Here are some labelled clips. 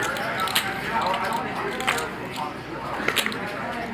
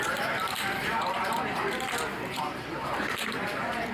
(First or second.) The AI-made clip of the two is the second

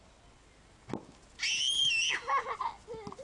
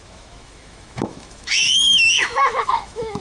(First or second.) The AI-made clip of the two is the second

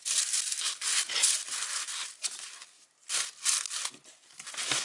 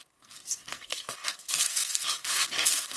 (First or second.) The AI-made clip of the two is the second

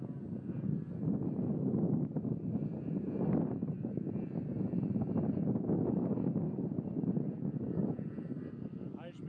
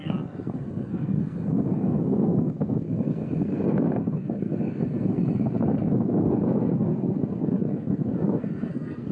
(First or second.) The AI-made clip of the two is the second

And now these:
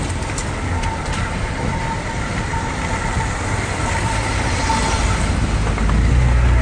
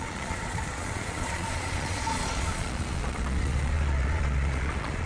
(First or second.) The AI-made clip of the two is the second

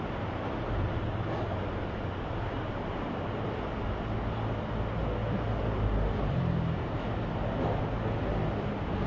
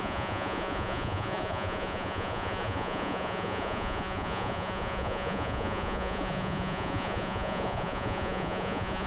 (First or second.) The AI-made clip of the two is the second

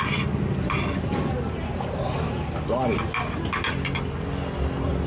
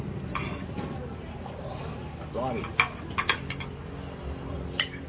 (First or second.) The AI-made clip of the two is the second